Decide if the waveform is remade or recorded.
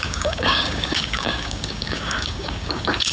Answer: remade